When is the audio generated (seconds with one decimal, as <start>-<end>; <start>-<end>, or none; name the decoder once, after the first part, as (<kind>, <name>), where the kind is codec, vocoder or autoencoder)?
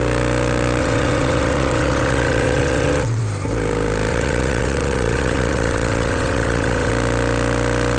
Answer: 0.8-3.2 (vocoder, WaveNeXt); 4.1-6.9